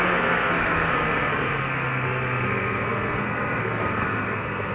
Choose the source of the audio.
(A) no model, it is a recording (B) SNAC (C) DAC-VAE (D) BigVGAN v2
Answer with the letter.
B